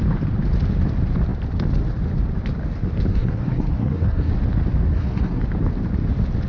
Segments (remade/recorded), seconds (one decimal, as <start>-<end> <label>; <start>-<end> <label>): 0.0-3.1 recorded; 3.1-4.3 remade; 4.3-4.9 recorded; 4.9-5.4 remade; 5.4-6.5 recorded